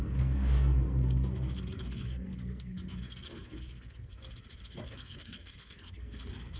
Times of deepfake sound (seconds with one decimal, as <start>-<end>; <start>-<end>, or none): 0.0-6.6